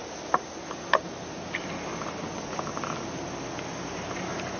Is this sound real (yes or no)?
yes